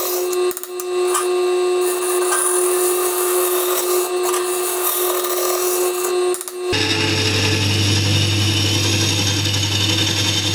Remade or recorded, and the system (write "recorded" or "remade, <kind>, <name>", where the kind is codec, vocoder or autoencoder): recorded